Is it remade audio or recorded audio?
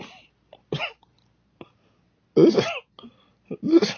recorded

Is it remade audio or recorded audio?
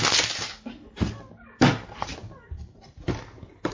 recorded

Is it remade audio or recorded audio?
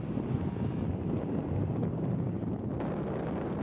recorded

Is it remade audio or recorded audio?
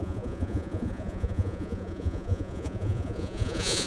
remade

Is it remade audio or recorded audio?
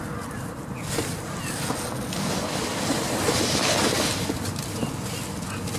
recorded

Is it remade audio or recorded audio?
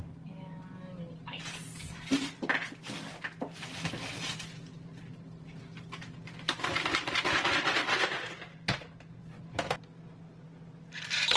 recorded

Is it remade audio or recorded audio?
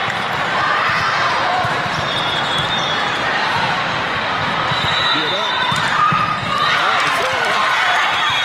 remade